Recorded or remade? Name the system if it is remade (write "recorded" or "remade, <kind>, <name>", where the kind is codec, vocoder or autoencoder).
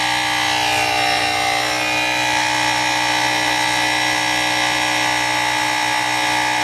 recorded